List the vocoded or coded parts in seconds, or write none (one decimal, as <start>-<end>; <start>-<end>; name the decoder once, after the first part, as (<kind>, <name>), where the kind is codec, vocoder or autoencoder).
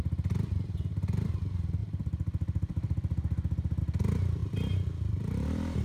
1.8-3.8 (vocoder, BigVGAN v2); 4.4-5.8